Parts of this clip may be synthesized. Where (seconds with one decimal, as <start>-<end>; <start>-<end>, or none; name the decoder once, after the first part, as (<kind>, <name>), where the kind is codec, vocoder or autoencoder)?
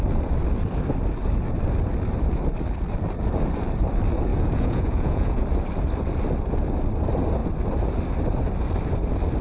4.3-5.4 (vocoder, Vocos)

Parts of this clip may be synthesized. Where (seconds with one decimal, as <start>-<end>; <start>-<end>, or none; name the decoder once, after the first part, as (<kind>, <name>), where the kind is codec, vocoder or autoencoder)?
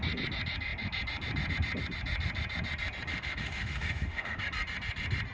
3.1-4.4 (autoencoder, DAC-VAE)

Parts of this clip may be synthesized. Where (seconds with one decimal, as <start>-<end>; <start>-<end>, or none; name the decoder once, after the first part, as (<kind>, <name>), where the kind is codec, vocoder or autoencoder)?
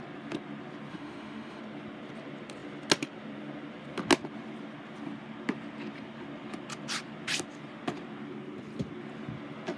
0.9-1.6 (autoencoder, DAC-VAE)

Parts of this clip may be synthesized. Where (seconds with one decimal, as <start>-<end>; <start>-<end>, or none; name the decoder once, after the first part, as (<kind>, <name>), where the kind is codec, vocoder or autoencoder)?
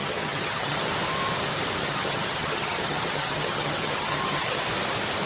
0.0-0.9 (vocoder, HiFi-GAN); 1.8-4.6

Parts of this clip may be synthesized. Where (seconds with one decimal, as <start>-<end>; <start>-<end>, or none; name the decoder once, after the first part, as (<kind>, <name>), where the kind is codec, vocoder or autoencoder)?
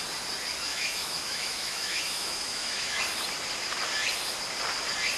0.7-3.0 (autoencoder, DAC-VAE)